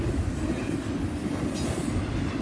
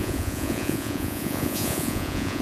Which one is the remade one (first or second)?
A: second